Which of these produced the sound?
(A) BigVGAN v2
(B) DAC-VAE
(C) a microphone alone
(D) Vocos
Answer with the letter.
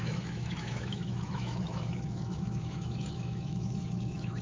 B